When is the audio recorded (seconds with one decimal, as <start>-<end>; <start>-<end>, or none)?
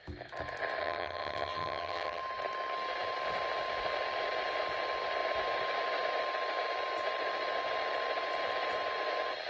0.0-0.8; 2.2-9.5